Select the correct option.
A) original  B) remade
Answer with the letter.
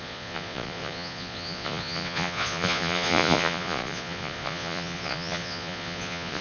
B